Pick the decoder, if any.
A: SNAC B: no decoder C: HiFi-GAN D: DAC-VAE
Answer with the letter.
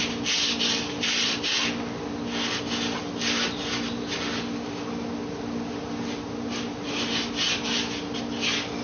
B